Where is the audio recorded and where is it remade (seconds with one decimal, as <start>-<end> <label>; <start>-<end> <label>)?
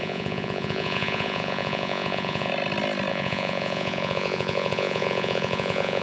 0.0-2.5 remade; 2.5-3.1 recorded; 3.1-6.0 remade